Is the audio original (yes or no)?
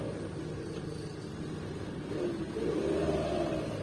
yes